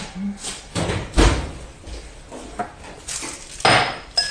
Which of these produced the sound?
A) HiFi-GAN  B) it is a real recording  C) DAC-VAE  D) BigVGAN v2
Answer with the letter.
B